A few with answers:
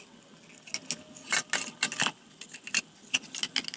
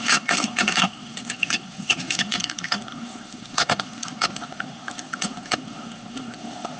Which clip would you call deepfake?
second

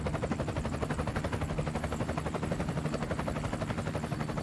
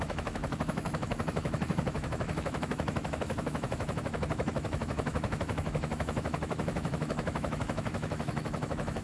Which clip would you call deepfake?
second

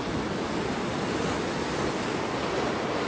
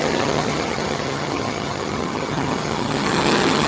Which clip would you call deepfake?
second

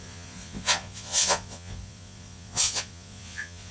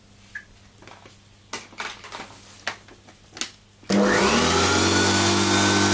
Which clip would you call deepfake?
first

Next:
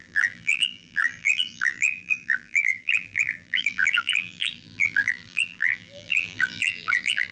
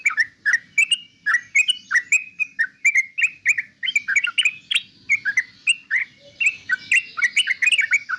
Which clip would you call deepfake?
first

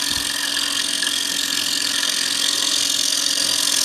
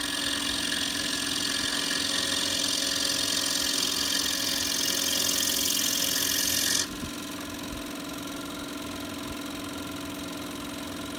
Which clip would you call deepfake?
first